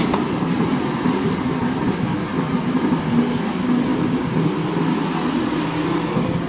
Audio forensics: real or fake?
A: real